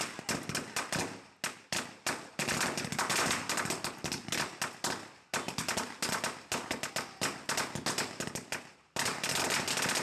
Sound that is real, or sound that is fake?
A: real